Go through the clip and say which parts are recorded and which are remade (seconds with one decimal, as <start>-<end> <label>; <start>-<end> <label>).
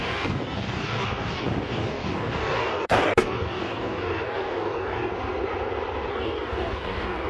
0.0-5.1 remade; 5.1-6.1 recorded; 6.1-7.3 remade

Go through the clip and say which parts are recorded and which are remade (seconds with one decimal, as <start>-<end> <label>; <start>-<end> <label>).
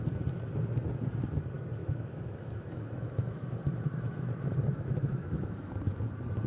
0.0-1.8 recorded; 1.8-5.7 remade; 5.7-6.5 recorded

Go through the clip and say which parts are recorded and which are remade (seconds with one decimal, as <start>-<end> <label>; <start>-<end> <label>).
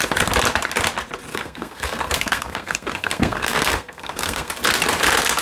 0.0-1.3 recorded; 1.3-4.5 remade; 4.5-5.4 recorded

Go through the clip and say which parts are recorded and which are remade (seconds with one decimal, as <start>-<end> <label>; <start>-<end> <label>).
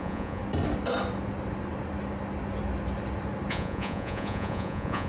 0.0-0.4 remade; 0.4-3.5 recorded; 3.5-5.1 remade